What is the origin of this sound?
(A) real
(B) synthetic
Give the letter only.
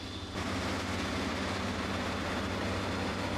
A